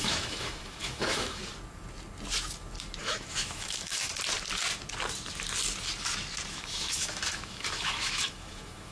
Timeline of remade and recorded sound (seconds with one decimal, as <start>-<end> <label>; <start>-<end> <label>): 0.0-1.4 remade; 1.4-3.0 recorded; 3.0-4.1 remade; 4.1-6.5 recorded; 6.5-8.9 remade

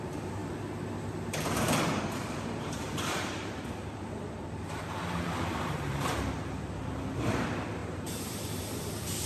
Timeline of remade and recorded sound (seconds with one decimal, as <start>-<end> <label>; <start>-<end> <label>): 0.0-0.4 remade; 0.4-1.3 recorded; 1.3-9.3 remade